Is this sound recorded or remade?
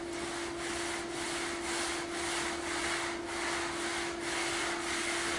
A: recorded